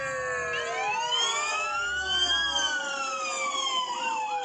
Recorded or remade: recorded